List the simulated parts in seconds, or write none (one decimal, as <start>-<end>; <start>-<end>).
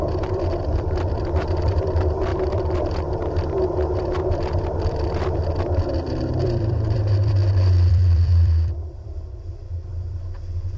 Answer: 0.0-7.4; 7.9-10.8